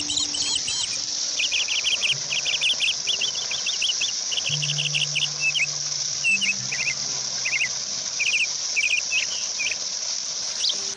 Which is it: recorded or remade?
recorded